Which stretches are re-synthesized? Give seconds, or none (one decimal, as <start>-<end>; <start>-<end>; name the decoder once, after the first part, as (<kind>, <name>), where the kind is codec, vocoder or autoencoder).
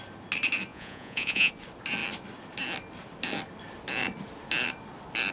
0.7-1.5 (vocoder, Vocos)